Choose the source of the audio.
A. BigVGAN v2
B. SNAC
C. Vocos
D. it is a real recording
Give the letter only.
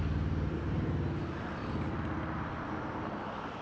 A